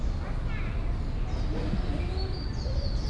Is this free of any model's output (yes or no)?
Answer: yes